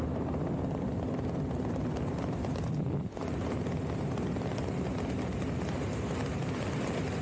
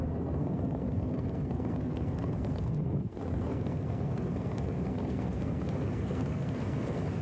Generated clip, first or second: second